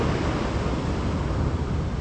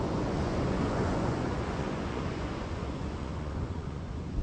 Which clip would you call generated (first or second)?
second